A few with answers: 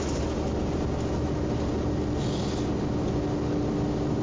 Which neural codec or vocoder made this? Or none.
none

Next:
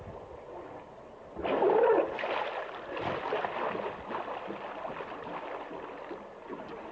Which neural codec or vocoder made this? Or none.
none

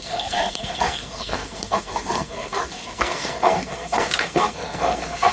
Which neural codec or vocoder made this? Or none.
codec, SNAC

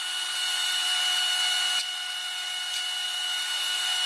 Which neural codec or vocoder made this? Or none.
none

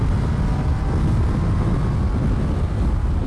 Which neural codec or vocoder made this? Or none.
none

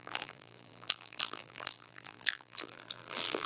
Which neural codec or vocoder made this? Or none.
vocoder, BigVGAN v2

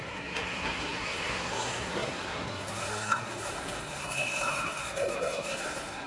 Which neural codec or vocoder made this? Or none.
codec, SNAC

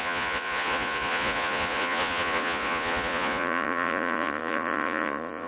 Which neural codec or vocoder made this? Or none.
vocoder, Vocos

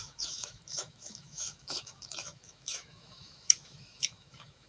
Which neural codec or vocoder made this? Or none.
autoencoder, DAC-VAE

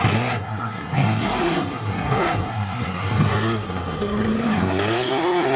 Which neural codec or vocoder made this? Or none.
codec, SNAC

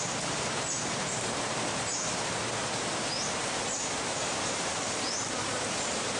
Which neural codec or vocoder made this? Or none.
vocoder, BigVGAN v2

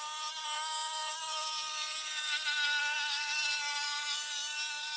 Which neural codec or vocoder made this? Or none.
vocoder, BigVGAN v2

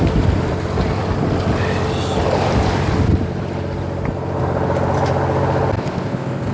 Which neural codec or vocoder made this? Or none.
none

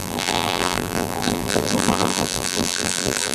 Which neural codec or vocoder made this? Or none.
vocoder, BigVGAN v2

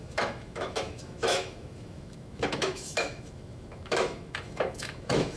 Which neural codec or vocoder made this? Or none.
autoencoder, DAC-VAE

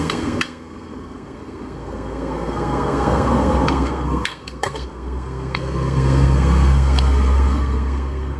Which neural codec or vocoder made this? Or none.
codec, SNAC